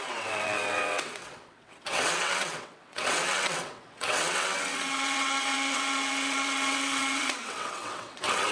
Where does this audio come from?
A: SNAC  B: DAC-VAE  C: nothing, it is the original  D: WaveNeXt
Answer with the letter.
D